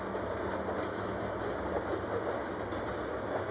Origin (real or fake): real